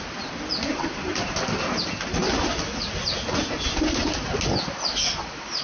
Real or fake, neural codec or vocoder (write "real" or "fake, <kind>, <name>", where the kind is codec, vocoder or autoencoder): real